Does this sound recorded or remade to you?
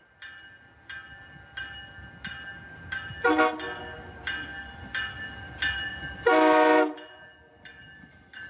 recorded